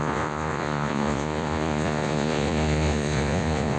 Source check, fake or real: fake